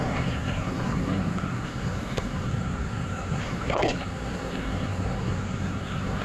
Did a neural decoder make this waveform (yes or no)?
yes